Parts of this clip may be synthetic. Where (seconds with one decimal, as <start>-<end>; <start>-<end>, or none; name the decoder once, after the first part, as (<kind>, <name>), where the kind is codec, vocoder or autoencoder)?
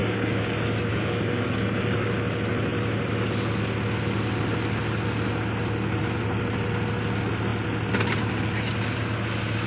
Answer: 0.0-2.1 (codec, DAC)